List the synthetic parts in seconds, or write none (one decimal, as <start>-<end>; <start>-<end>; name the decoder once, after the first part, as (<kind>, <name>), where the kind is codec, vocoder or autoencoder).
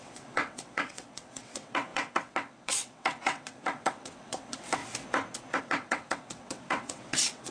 0.0-4.8 (vocoder, WaveNeXt); 5.6-7.5